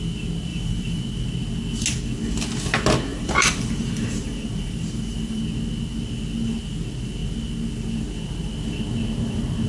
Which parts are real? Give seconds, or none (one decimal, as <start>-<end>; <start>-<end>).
0.0-0.5; 1.0-3.1; 5.4-9.7